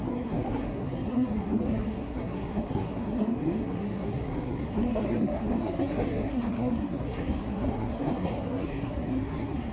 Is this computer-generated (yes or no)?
yes